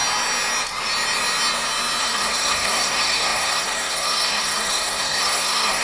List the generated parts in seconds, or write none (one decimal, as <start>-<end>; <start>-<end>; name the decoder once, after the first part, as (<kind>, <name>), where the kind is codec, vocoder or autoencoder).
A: 2.0-5.8 (codec, SNAC)